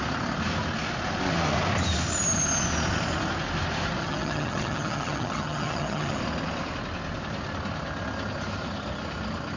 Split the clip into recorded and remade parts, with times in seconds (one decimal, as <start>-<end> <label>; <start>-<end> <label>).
0.0-4.0 recorded; 4.0-6.2 remade; 6.2-9.6 recorded